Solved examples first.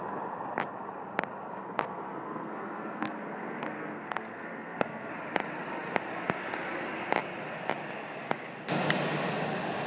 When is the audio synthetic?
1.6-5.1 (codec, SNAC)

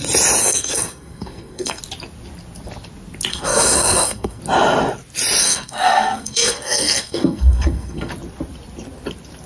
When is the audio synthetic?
0.4-1.8 (codec, SNAC); 3.3-4.4; 5.4-8.1

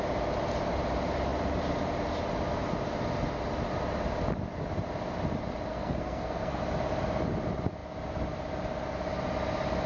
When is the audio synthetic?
5.7-6.6 (codec, SNAC)